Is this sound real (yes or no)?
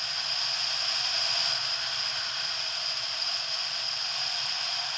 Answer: yes